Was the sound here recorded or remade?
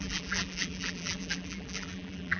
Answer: remade